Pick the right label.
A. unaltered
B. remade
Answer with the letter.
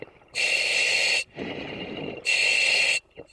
A